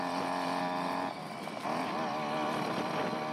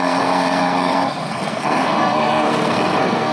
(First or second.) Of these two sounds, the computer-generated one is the second